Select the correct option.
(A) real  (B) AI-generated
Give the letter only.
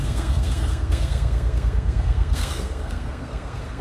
B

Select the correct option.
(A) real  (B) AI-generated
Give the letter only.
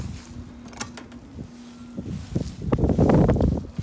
A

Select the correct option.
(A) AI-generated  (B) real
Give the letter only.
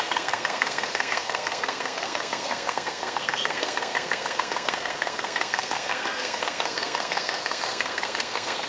A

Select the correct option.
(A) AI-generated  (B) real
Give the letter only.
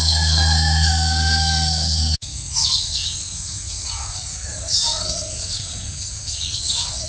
A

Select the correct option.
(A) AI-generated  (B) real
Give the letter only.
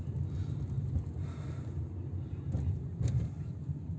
B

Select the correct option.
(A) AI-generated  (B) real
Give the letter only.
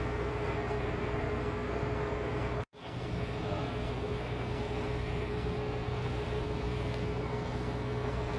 A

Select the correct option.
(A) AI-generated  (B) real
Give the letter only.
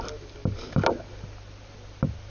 B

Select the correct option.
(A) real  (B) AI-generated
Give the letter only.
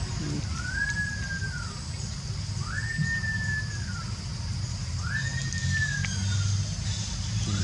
A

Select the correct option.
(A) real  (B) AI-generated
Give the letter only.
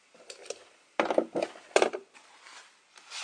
A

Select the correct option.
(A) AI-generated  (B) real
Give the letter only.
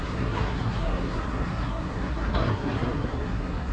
A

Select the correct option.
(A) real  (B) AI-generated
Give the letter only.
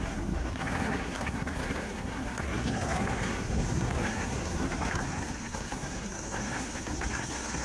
B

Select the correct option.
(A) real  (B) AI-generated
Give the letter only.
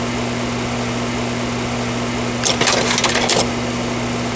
A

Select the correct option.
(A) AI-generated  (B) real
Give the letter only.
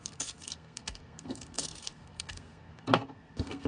A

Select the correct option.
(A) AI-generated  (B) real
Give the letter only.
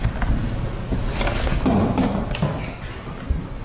B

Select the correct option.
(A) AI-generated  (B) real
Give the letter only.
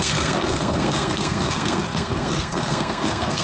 A